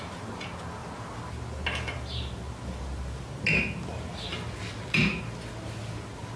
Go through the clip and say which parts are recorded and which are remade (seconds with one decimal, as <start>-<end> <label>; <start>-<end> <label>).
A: 0.0-6.4 recorded